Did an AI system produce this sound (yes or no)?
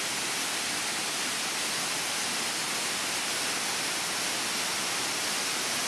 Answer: no